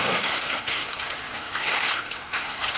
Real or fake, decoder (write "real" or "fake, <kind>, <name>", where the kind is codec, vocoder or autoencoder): fake, codec, SNAC